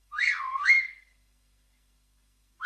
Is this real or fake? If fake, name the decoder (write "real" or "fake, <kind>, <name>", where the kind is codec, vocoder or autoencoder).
fake, codec, SNAC